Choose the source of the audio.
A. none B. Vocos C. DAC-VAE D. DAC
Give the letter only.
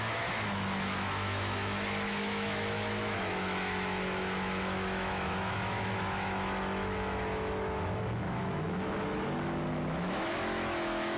C